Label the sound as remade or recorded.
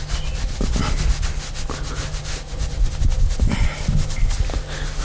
recorded